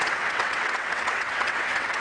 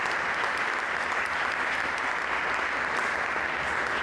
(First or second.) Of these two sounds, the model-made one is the first